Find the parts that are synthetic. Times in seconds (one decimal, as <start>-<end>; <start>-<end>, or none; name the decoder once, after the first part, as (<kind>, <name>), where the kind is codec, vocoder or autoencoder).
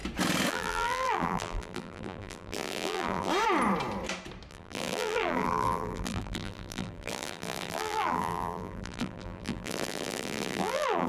0.5-3.3 (vocoder, BigVGAN v2); 4.5-11.1